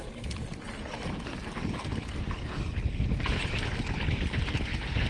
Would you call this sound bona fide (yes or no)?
yes